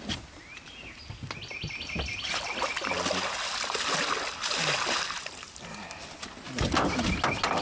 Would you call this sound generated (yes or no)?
no